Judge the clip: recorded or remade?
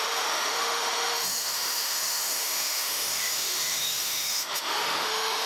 remade